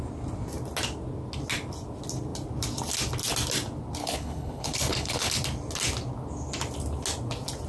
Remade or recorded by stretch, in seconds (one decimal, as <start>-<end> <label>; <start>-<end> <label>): 0.0-4.0 recorded; 4.0-5.3 remade; 5.3-7.7 recorded